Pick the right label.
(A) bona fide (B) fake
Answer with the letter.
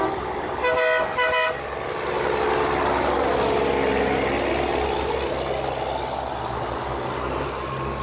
A